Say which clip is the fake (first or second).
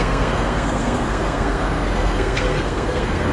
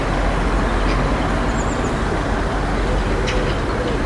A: first